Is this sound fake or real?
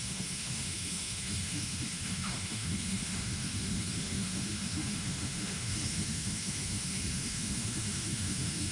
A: fake